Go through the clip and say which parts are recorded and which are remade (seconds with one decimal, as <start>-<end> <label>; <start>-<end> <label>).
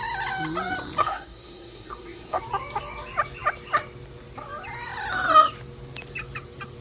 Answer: 0.0-1.0 recorded; 1.0-2.4 remade; 2.4-6.8 recorded